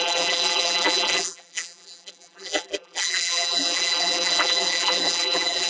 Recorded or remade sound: remade